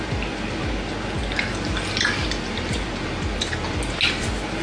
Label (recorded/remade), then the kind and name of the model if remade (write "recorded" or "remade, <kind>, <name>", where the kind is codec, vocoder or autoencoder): recorded